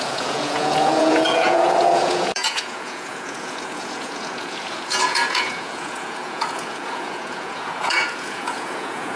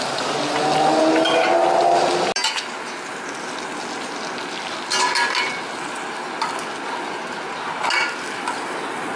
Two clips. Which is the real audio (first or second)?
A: second